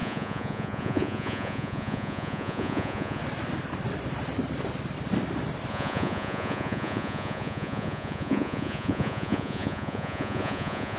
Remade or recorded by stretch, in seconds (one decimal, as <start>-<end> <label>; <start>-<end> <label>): 0.0-3.2 remade; 3.2-5.7 recorded; 5.7-11.0 remade